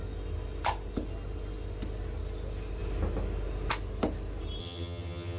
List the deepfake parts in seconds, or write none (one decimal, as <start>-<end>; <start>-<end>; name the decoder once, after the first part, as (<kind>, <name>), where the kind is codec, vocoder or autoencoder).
4.6-5.4 (vocoder, HiFi-GAN)